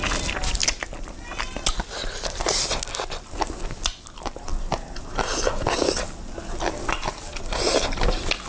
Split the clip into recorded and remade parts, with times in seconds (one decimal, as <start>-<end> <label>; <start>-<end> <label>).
0.0-8.5 recorded